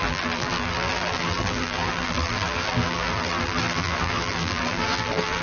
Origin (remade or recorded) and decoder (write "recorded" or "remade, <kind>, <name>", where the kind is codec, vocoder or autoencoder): remade, vocoder, BigVGAN v2